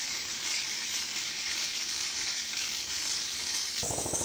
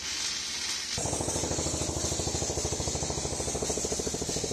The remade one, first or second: first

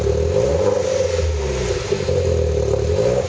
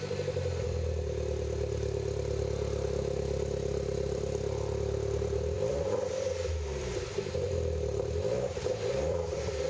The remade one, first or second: second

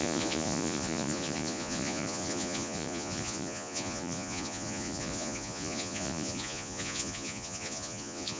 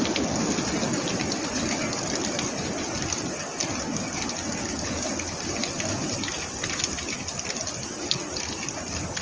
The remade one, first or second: first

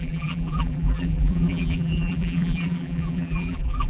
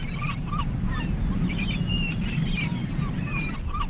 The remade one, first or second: first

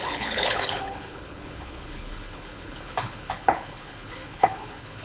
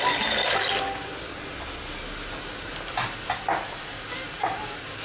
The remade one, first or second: first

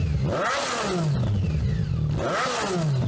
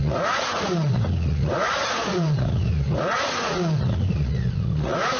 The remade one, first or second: second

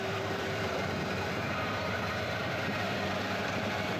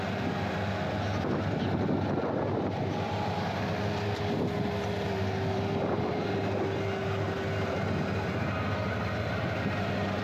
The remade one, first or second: first